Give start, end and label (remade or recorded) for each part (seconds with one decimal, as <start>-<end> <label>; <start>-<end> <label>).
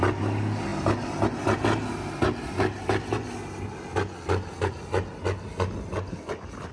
0.0-6.7 recorded